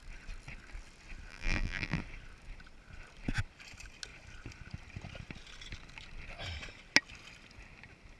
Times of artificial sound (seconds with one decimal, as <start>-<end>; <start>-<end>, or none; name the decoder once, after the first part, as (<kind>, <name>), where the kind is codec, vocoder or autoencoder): 1.3-2.0 (vocoder, BigVGAN v2)

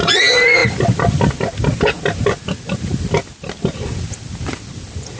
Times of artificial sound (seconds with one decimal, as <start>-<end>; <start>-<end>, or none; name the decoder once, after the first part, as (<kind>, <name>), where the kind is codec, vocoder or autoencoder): none

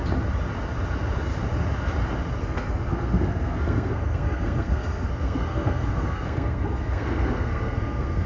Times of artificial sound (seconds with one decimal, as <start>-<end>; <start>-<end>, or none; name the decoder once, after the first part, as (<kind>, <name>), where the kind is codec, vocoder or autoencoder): 2.4-8.3 (codec, SNAC)

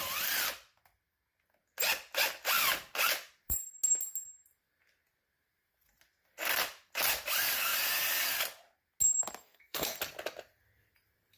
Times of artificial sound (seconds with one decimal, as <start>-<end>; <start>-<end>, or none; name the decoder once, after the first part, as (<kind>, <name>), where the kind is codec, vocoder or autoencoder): 9.4-10.0 (codec, SNAC)

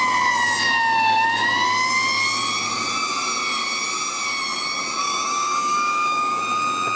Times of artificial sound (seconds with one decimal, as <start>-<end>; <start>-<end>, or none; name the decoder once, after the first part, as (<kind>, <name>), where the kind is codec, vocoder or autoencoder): 5.0-6.4 (codec, DAC)

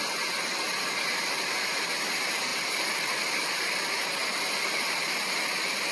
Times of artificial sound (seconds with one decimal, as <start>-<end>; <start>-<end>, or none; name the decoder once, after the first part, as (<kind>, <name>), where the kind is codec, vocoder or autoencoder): 2.5-3.2 (vocoder, BigVGAN v2)

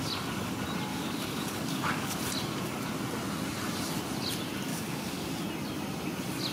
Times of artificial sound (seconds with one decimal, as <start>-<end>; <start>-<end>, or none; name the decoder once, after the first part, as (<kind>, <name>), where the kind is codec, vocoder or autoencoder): 0.9-2.2 (codec, DAC); 4.7-5.3